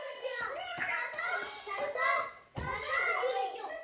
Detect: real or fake fake